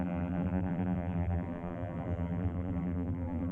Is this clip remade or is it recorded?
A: remade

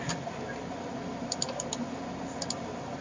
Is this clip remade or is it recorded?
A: remade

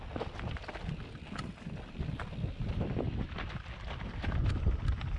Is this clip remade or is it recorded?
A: recorded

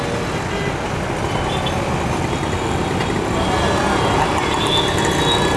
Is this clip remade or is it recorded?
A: recorded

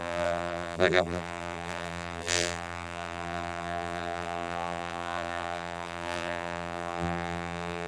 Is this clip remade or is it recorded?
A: remade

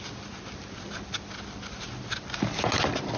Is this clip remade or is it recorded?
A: recorded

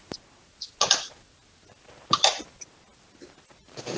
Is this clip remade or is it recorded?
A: recorded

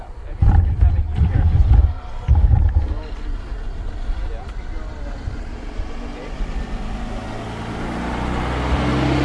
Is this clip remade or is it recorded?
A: recorded